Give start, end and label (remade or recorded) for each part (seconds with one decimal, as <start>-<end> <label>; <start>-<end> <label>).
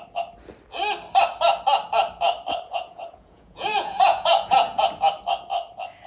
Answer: 0.0-2.7 recorded; 2.7-4.8 remade; 4.8-6.1 recorded